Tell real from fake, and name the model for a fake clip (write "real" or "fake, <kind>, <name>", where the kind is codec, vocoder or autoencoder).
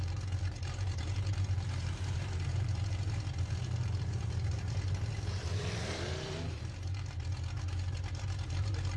fake, vocoder, BigVGAN v2